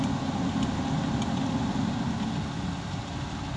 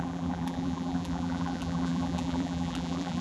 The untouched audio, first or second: first